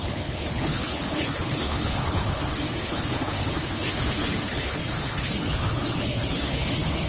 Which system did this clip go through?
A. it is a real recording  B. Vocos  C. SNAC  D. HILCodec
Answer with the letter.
D